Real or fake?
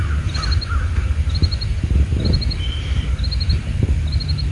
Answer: real